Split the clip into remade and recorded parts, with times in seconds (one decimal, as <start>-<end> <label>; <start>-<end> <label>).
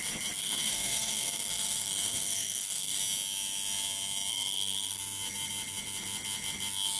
0.0-0.4 recorded; 0.4-3.0 remade; 3.0-4.3 recorded; 4.3-5.0 remade; 5.0-7.0 recorded